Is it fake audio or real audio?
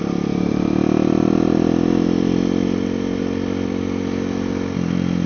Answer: real